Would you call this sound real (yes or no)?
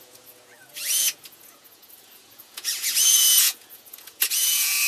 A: no